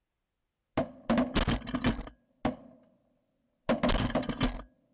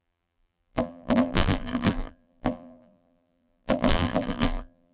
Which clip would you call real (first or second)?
first